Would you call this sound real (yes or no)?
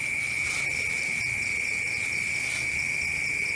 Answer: no